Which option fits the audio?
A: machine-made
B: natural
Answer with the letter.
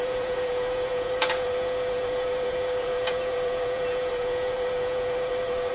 A